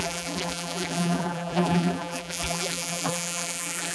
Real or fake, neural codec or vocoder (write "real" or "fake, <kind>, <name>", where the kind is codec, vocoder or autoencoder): fake, vocoder, BigVGAN v2